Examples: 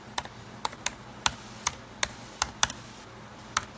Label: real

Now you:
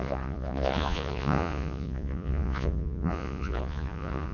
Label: fake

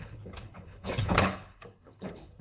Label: fake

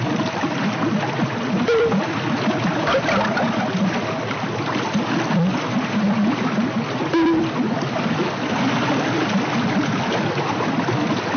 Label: real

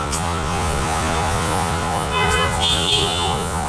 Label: fake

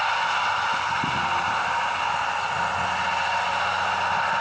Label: real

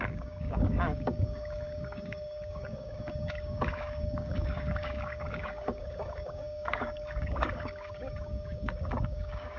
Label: fake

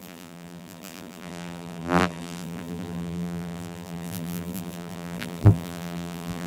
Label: fake